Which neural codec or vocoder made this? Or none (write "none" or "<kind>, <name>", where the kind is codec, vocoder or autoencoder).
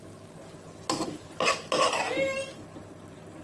none